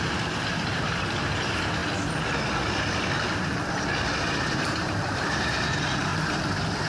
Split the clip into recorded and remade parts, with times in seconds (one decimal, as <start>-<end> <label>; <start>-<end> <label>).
0.0-1.8 remade; 1.8-4.3 recorded; 4.3-6.9 remade